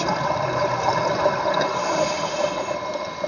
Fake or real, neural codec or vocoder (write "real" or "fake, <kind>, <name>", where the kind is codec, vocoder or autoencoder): real